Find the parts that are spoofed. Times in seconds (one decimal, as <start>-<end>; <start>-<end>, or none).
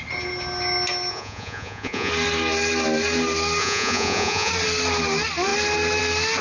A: 1.1-2.1; 3.6-4.5